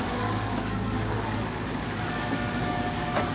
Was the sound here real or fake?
fake